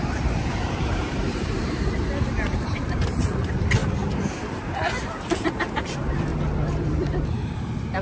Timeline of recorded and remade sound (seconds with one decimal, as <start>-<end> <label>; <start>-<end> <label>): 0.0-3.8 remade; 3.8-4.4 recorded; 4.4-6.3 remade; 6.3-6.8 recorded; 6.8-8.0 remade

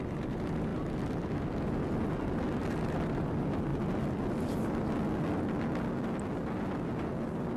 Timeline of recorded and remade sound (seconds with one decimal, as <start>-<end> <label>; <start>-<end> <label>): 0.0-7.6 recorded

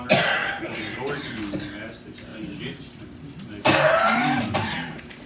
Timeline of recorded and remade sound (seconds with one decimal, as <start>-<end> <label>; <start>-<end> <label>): 0.0-0.4 recorded; 0.4-1.2 remade; 1.2-2.3 recorded; 2.3-5.3 remade

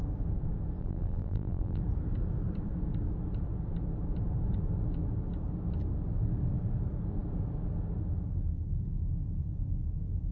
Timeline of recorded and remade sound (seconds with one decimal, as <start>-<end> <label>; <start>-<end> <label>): 0.0-0.8 recorded; 0.8-1.8 remade; 1.8-10.3 recorded